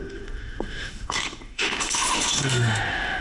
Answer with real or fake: fake